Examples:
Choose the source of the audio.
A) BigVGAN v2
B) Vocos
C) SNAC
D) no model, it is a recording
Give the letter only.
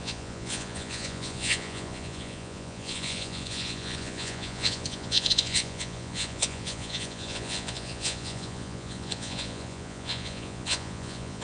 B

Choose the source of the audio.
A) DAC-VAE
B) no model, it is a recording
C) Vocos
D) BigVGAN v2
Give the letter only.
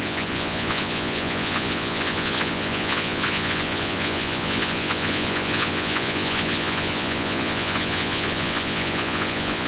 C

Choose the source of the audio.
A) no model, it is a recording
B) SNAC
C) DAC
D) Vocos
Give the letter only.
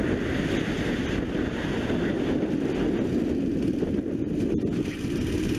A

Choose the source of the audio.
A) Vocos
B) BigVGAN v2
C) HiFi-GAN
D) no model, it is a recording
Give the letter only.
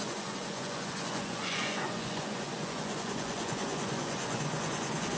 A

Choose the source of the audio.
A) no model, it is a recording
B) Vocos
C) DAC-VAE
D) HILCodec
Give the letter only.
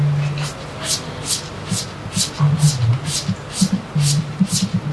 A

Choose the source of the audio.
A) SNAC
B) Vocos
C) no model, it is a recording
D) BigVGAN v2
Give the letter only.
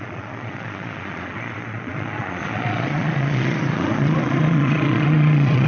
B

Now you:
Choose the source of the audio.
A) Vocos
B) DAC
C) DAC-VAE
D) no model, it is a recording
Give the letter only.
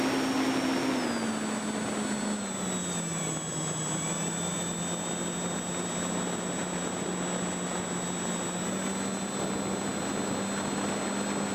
D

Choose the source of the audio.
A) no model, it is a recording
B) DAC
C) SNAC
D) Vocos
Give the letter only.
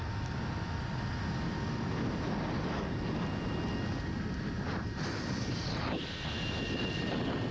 A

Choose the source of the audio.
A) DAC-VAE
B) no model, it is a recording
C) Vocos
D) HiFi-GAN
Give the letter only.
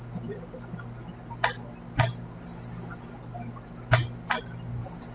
B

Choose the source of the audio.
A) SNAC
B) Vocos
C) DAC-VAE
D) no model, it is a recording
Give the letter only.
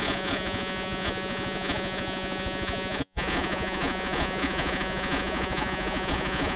B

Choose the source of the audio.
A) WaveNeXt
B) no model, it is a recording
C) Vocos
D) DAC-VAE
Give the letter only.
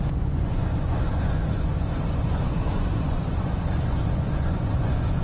C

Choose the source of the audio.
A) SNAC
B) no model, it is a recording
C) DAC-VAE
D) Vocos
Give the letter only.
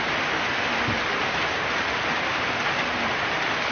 B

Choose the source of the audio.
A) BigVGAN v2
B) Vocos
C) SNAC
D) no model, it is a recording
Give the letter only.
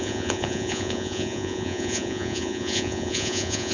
B